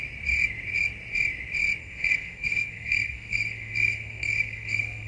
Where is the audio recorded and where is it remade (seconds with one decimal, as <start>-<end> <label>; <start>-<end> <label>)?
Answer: 0.0-1.8 recorded; 1.8-5.1 remade